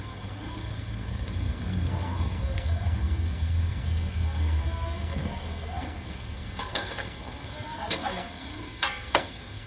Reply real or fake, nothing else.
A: fake